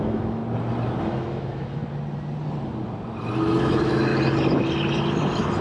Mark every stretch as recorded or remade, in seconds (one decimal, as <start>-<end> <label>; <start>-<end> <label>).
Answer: 0.0-0.4 remade; 0.4-1.0 recorded; 1.0-1.8 remade; 1.8-3.6 recorded; 3.6-4.1 remade; 4.1-5.6 recorded